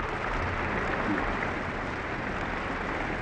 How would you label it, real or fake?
real